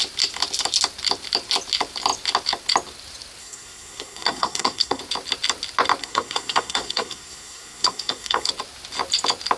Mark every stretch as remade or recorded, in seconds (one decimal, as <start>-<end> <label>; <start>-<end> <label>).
0.0-3.4 recorded; 3.4-5.0 remade; 5.0-6.0 recorded; 6.0-8.5 remade; 8.5-9.6 recorded